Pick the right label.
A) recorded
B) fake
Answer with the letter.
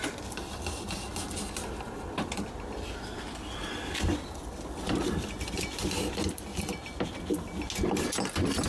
A